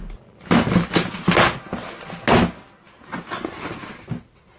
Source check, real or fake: real